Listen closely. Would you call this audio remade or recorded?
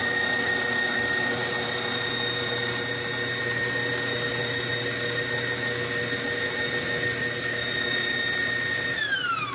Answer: recorded